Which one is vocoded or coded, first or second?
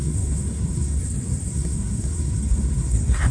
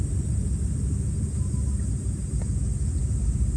first